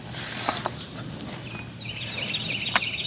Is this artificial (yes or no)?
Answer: no